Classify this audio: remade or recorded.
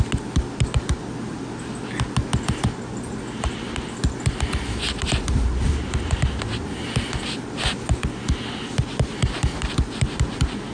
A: recorded